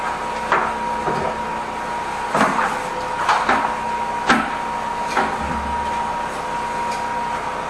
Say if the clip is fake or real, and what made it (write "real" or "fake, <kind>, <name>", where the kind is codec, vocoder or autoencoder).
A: real